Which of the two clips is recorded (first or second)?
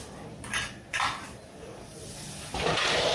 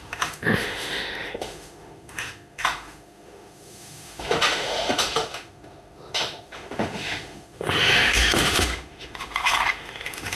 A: first